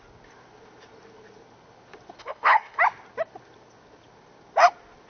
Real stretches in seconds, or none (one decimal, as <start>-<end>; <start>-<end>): 0.0-2.2; 2.8-5.1